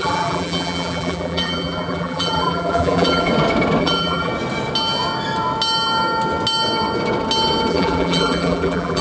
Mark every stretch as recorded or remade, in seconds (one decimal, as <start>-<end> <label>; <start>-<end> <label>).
0.0-3.3 remade; 3.3-3.8 recorded; 3.8-4.3 remade; 4.3-7.7 recorded; 7.7-9.0 remade